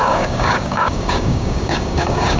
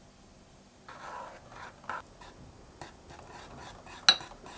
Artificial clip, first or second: first